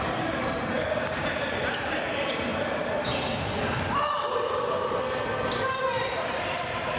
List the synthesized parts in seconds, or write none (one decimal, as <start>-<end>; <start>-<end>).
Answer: 0.0-2.5; 6.0-7.0